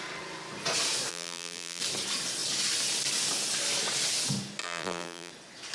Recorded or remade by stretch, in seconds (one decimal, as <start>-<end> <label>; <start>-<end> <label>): 0.0-1.1 recorded; 1.1-1.8 remade; 1.8-4.6 recorded; 4.6-5.3 remade; 5.3-5.7 recorded